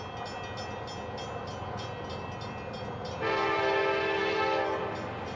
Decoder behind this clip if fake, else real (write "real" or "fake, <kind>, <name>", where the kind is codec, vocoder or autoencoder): real